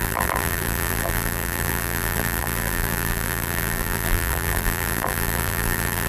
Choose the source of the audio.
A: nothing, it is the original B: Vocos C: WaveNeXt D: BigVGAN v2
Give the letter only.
D